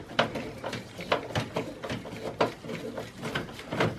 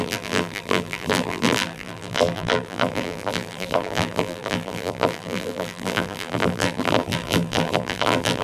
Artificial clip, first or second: second